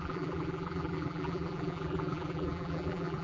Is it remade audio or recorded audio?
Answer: remade